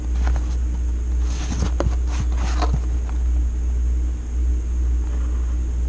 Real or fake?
real